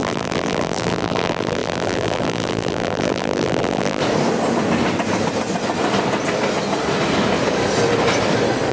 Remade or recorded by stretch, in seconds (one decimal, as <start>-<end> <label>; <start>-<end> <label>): 0.0-4.0 remade; 4.0-8.7 recorded

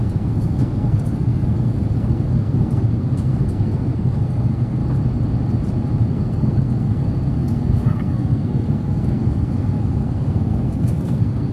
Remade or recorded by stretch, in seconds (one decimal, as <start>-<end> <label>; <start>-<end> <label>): 0.0-4.8 remade; 4.8-6.1 recorded; 6.1-11.5 remade

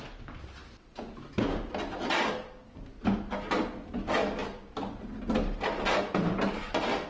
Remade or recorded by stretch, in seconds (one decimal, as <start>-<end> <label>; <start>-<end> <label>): 0.0-7.1 recorded

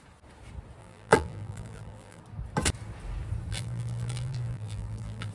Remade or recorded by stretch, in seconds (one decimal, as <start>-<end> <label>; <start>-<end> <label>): 0.0-0.8 recorded; 0.8-2.2 remade; 2.2-3.5 recorded; 3.5-5.3 remade